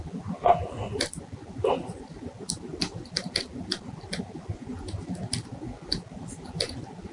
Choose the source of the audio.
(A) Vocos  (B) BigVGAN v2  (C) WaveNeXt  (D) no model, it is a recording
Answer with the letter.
D